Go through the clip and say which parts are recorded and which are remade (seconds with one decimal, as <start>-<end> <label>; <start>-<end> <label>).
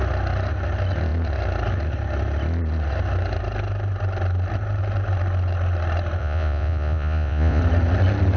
0.0-6.2 recorded; 6.2-7.6 remade; 7.6-8.4 recorded